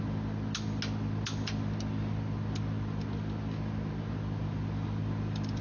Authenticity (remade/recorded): recorded